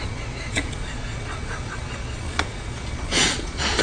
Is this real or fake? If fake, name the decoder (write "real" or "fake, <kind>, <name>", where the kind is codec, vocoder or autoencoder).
fake, vocoder, Vocos